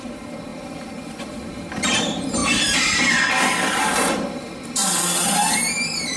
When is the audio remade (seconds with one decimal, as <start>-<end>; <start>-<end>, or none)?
0.0-2.4; 3.7-6.2